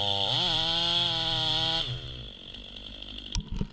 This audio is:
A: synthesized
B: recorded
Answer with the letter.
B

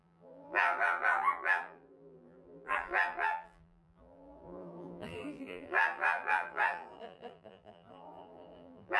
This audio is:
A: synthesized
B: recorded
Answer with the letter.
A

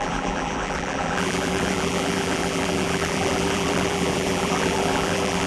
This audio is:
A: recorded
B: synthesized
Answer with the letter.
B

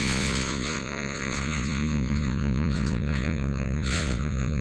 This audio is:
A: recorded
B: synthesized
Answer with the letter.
B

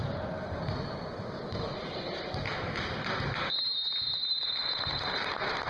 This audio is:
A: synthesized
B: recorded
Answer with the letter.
A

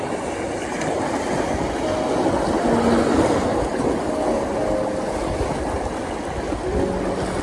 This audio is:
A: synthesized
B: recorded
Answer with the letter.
B